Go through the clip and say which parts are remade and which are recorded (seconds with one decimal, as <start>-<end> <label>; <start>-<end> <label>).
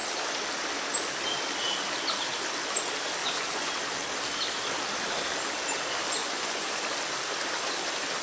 0.0-3.2 recorded; 3.2-3.8 remade; 3.8-6.2 recorded; 6.2-6.8 remade; 6.8-8.2 recorded